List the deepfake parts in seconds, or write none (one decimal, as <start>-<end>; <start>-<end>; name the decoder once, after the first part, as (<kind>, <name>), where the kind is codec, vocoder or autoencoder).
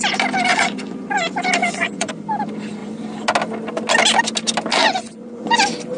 0.5-1.1 (vocoder, Vocos); 1.6-2.1; 4.8-5.5